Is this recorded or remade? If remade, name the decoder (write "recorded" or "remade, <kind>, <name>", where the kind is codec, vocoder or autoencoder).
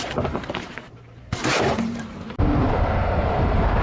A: remade, vocoder, BigVGAN v2